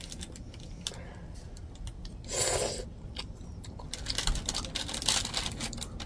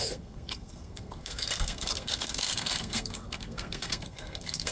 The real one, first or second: first